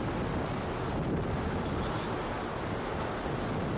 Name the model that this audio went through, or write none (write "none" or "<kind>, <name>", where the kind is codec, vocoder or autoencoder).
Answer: none